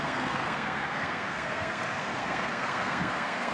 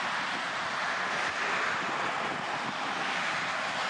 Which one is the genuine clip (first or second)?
second